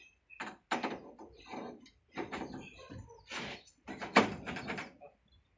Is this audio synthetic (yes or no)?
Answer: no